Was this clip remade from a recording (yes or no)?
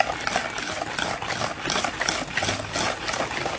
no